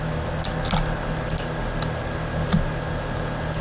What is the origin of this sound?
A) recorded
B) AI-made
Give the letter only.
A